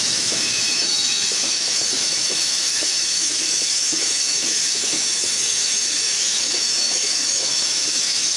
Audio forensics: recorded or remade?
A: remade